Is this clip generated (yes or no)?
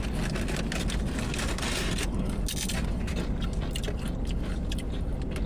no